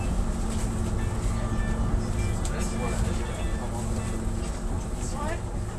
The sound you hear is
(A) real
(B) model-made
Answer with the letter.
A